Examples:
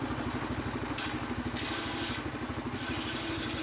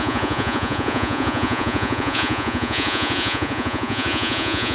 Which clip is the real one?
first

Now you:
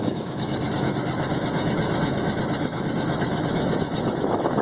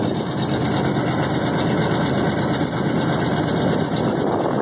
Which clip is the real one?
second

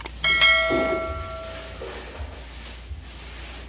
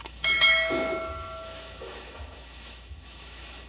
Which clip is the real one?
first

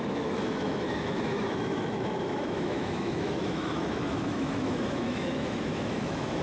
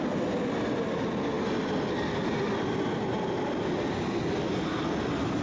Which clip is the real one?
second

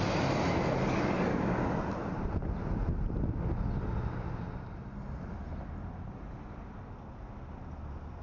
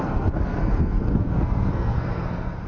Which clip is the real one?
first